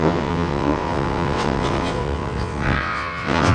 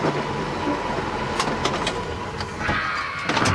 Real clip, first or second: second